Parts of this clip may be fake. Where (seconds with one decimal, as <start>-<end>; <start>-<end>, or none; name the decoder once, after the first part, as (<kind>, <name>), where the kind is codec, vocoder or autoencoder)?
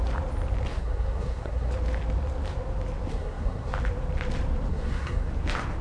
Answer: 0.7-1.7 (codec, SNAC); 3.1-3.7; 4.7-5.3